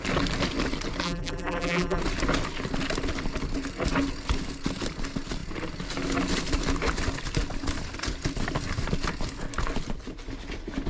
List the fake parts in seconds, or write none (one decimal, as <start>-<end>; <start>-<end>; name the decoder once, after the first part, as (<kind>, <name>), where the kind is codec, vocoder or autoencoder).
1.0-2.0 (vocoder, BigVGAN v2)